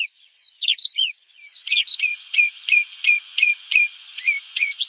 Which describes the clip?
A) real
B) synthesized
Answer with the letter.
B